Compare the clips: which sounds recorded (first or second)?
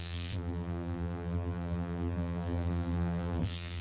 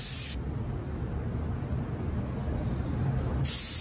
second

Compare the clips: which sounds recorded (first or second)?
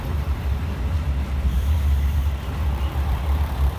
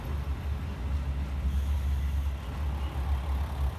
second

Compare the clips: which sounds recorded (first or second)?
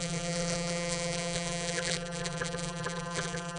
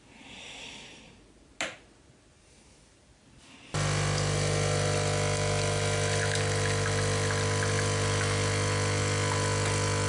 second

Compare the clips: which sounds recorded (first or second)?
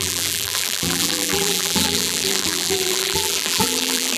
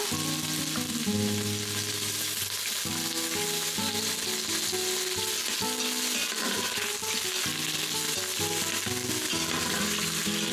second